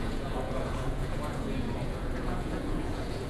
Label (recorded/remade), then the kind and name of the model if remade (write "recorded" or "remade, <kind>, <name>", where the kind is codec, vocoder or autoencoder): remade, vocoder, Vocos